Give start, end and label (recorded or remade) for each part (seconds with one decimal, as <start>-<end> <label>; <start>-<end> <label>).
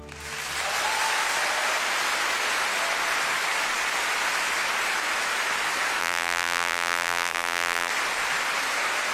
0.0-6.0 recorded; 6.0-7.9 remade; 7.9-9.1 recorded